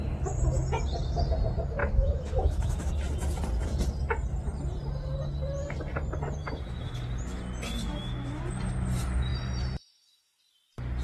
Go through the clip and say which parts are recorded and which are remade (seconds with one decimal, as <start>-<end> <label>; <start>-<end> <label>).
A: 0.0-1.8 recorded; 1.8-2.9 remade; 2.9-6.4 recorded; 6.4-6.9 remade; 6.9-7.8 recorded; 7.8-8.4 remade; 8.4-11.0 recorded